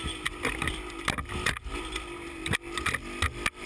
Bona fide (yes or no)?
yes